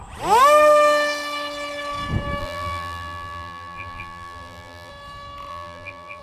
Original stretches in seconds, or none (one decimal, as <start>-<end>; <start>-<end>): 0.0-2.4; 4.9-5.5